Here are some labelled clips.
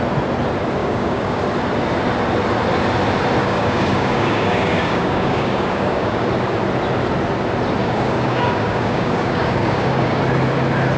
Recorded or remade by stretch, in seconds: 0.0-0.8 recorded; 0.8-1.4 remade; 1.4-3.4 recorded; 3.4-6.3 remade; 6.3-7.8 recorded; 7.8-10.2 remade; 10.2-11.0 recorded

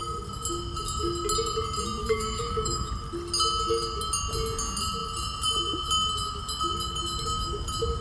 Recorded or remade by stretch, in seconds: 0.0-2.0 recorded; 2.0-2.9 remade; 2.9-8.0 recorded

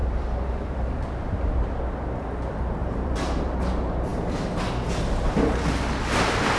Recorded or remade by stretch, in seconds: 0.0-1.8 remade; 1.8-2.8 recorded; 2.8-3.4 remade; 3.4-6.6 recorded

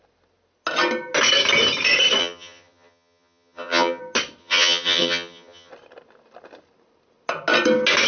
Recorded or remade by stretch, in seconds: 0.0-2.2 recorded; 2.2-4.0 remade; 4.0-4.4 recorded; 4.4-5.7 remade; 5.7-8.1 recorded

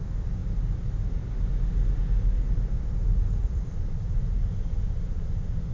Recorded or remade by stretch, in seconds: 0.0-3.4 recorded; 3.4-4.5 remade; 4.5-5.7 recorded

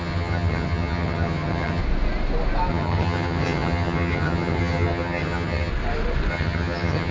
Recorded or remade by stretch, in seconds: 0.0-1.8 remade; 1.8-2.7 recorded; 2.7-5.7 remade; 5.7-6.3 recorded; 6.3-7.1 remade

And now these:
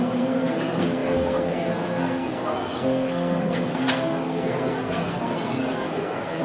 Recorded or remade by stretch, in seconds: 0.0-6.4 remade

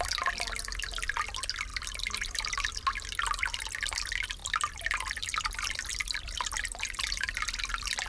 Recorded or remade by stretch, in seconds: 0.0-1.7 recorded; 1.7-2.8 remade; 2.8-5.9 recorded; 5.9-8.1 remade